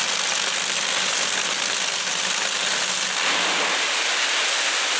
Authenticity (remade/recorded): recorded